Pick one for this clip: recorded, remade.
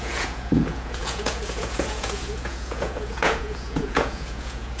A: remade